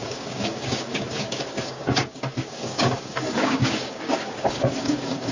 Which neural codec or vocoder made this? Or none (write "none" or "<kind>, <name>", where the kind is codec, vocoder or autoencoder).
codec, DAC